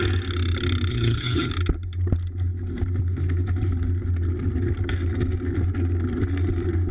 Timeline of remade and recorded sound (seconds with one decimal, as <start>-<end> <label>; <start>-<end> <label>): 0.0-0.9 recorded; 0.9-1.5 remade; 1.5-6.9 recorded